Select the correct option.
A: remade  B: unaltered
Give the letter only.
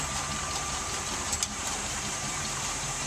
A